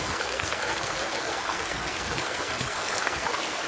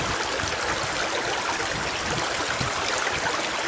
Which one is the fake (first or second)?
first